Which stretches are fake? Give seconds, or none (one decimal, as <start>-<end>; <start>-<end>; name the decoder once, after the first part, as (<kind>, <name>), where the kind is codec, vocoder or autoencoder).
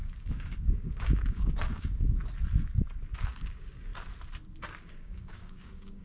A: 0.0-2.2 (codec, DAC); 3.3-3.9; 4.9-6.0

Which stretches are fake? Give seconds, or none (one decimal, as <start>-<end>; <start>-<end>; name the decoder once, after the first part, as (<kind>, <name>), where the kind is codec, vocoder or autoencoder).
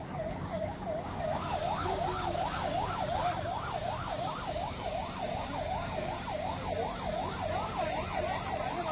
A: 0.0-6.6 (codec, DAC)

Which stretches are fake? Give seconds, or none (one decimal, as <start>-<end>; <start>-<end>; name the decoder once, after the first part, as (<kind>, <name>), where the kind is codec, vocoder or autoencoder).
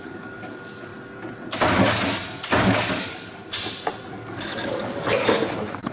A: 0.0-0.9 (codec, DAC); 2.6-3.4; 4.1-5.9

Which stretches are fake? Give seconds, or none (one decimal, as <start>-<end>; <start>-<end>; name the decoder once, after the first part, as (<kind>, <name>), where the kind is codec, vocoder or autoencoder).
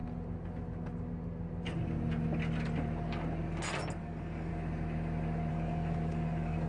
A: 4.0-4.5 (codec, DAC); 5.5-6.7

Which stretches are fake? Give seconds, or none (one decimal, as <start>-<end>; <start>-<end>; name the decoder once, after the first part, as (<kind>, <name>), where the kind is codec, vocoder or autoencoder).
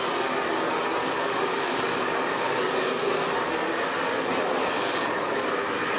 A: 1.0-2.4 (codec, DAC)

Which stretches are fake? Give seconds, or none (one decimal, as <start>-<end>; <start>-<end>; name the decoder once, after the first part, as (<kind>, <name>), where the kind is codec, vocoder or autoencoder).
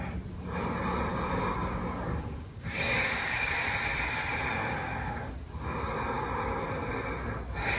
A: 1.1-3.5 (codec, DAC); 4.6-5.3